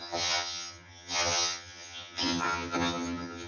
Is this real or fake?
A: fake